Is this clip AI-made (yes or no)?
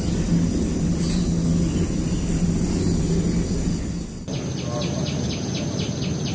no